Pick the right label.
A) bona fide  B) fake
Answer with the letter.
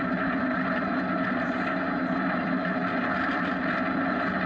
A